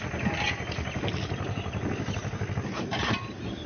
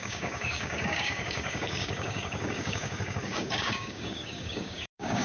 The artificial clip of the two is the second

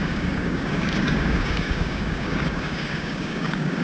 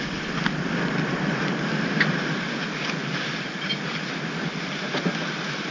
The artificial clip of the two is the first